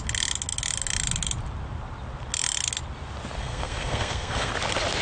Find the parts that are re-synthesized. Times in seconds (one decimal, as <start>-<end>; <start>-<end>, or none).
3.4-4.5